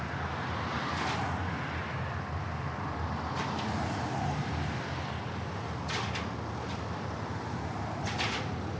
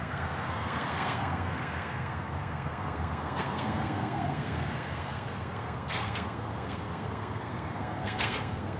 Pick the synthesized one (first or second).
second